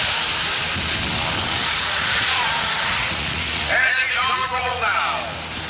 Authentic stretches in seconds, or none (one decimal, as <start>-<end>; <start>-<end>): 0.0-1.6; 5.0-5.7